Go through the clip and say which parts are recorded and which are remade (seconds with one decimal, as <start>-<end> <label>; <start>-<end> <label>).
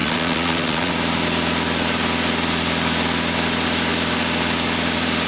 0.0-0.9 remade; 0.9-5.3 recorded